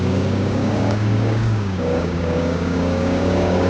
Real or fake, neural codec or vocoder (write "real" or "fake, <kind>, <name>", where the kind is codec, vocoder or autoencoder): fake, codec, DAC